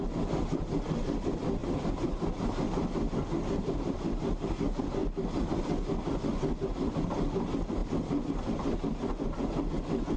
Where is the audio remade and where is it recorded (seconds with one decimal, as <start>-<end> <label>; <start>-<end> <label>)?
0.0-10.2 recorded